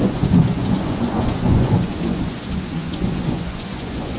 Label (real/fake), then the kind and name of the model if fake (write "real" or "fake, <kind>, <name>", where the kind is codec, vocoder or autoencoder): fake, vocoder, Vocos